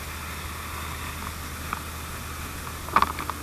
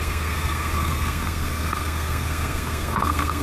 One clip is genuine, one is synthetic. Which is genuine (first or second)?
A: first